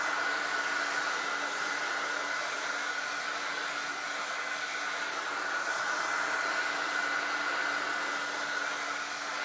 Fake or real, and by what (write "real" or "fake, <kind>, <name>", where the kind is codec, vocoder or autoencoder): real